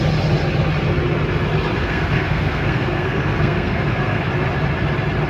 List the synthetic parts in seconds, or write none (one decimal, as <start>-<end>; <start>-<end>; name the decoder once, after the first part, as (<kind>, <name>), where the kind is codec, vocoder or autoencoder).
1.8-4.3 (codec, SNAC)

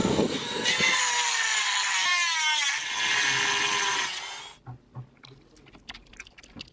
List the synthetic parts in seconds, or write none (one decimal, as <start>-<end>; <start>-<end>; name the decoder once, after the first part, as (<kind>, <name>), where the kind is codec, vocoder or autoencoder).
0.0-1.0 (codec, SNAC)

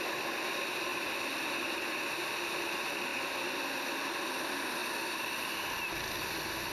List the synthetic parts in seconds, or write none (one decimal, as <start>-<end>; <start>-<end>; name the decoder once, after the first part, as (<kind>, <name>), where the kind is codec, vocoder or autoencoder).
none

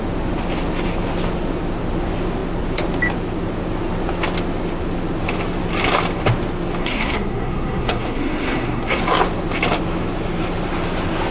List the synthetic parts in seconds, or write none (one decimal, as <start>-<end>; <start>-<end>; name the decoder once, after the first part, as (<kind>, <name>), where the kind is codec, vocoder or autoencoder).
6.8-9.0 (codec, SNAC)

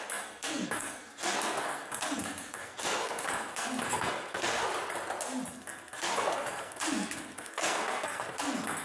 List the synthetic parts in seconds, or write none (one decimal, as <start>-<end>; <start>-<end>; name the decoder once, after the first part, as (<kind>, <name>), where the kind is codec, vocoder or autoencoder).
0.0-4.7 (codec, SNAC); 5.5-8.8